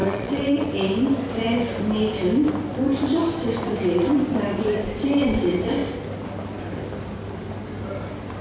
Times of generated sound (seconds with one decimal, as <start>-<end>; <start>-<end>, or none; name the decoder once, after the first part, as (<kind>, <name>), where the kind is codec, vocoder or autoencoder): 0.0-0.7 (vocoder, WaveNeXt)